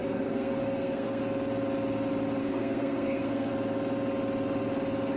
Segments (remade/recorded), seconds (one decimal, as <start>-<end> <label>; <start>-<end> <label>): 0.0-1.2 remade; 1.2-2.4 recorded; 2.4-3.5 remade; 3.5-5.2 recorded